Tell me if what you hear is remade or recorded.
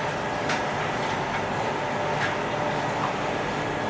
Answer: recorded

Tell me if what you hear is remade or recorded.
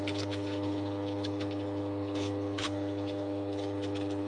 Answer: remade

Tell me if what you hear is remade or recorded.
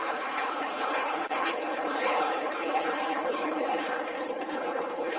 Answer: remade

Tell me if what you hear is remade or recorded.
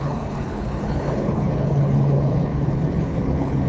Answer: remade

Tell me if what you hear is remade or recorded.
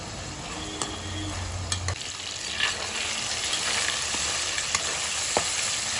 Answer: recorded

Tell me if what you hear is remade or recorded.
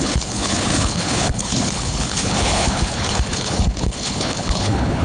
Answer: remade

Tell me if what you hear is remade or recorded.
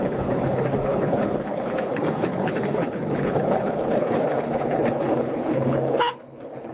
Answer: remade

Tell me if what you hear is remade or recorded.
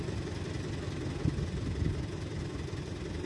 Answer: recorded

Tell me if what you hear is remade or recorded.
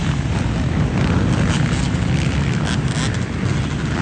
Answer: recorded